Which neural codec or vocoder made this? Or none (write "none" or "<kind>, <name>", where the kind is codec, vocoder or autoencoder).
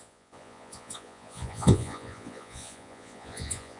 vocoder, Vocos